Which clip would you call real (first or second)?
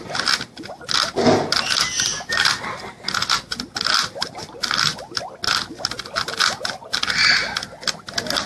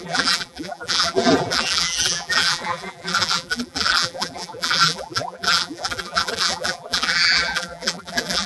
first